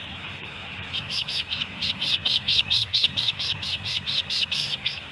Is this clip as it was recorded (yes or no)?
no